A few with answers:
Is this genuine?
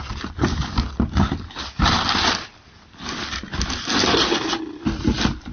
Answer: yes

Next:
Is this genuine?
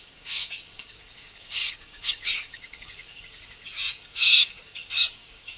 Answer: no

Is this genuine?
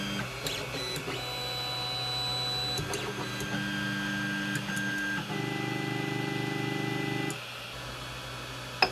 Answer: yes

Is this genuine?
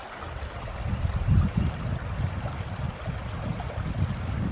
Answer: yes